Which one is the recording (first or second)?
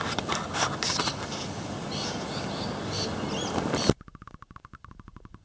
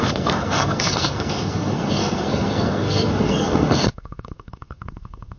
first